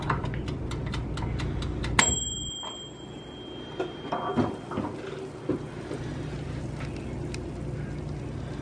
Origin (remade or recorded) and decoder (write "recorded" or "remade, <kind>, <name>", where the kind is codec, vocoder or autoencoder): recorded